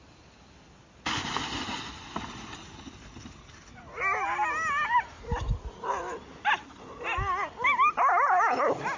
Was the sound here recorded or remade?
recorded